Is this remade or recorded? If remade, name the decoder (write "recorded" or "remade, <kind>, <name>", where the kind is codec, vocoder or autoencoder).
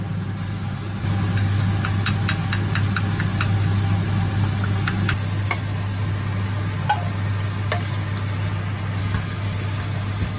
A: recorded